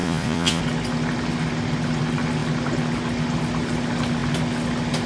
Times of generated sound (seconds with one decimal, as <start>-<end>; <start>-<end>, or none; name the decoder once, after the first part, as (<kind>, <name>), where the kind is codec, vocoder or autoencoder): 0.0-0.6 (vocoder, Vocos)

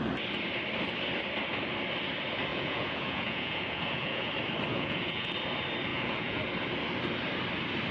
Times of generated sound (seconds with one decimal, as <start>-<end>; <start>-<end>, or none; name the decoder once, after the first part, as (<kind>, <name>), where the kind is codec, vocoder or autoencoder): 2.5-4.3 (vocoder, Vocos); 4.7-5.3; 5.9-6.4

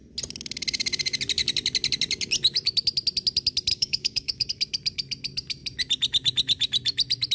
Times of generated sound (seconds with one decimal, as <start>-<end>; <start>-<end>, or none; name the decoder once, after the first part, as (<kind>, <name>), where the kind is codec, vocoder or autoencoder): 3.7-4.5 (codec, DAC)

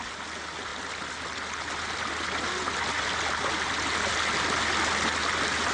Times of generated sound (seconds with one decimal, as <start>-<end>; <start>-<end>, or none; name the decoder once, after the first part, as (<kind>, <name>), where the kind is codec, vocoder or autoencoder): none

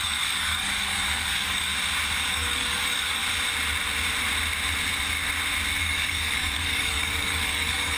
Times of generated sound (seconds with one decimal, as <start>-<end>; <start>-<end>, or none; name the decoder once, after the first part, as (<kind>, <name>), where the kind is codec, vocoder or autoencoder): 0.0-1.7 (codec, DAC); 2.3-3.2; 5.8-8.0